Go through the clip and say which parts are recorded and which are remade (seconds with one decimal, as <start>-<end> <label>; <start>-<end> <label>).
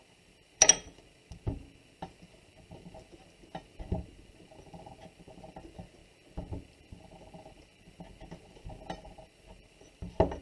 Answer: 0.0-10.4 recorded